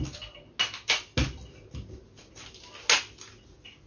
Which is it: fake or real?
real